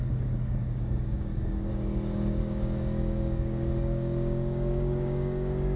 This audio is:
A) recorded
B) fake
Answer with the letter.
B